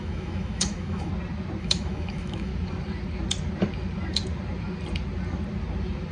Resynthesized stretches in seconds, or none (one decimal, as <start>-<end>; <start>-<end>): 0.0-1.1; 1.6-2.5